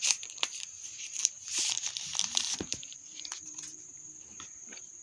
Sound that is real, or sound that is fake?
fake